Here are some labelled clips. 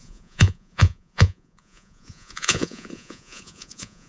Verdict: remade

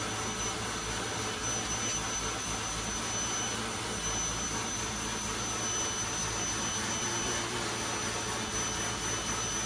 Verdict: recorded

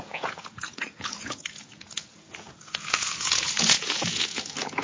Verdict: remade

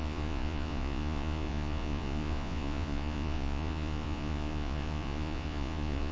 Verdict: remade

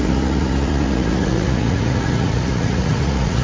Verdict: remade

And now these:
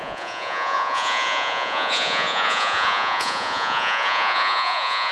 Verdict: remade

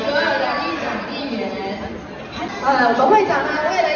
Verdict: recorded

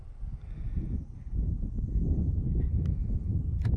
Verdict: recorded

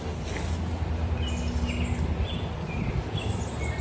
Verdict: recorded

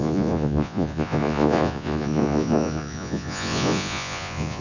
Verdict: remade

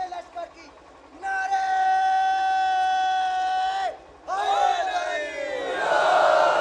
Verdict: recorded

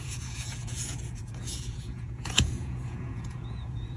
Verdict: remade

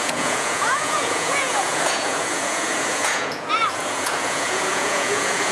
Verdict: remade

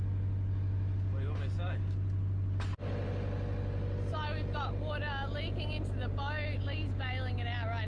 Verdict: recorded